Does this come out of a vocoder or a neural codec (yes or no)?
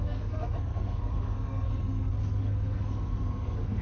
yes